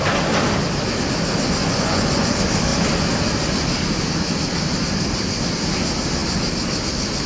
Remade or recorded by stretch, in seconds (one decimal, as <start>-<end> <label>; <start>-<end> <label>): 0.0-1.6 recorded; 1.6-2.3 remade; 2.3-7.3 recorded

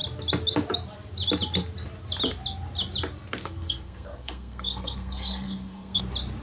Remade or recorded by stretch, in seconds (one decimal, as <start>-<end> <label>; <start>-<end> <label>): 0.0-3.4 recorded; 3.4-6.0 remade; 6.0-6.4 recorded

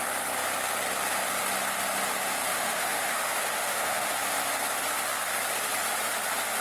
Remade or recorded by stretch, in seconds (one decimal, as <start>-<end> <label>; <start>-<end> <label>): 0.0-2.5 recorded; 2.5-4.1 remade; 4.1-6.6 recorded